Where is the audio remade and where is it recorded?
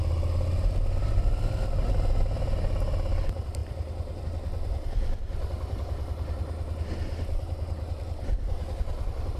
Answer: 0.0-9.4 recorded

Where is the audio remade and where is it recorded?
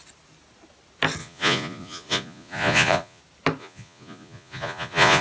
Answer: 0.0-1.2 recorded; 1.2-3.2 remade; 3.2-3.6 recorded; 3.6-5.2 remade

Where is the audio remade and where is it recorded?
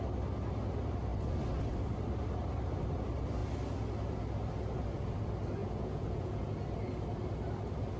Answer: 0.0-5.6 recorded; 5.6-6.5 remade; 6.5-8.0 recorded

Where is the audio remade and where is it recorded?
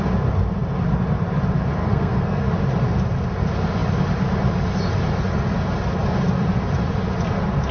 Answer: 0.0-1.8 recorded; 1.8-2.5 remade; 2.5-7.7 recorded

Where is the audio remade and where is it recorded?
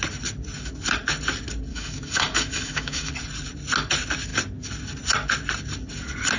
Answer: 0.0-1.7 recorded; 1.7-3.1 remade; 3.1-6.4 recorded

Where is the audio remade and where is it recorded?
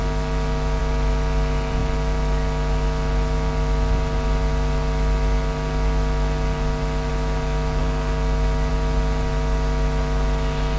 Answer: 0.0-10.8 recorded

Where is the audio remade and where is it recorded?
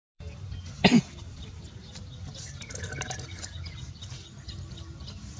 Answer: 0.0-1.7 remade; 1.7-5.4 recorded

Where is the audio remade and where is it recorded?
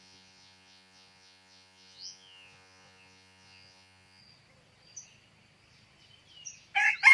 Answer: 0.0-4.2 remade; 4.2-7.1 recorded